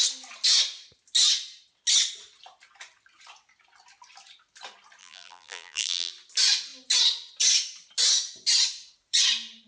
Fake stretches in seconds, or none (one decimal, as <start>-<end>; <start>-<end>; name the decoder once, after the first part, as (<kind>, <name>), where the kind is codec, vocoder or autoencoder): 5.0-6.1 (vocoder, BigVGAN v2)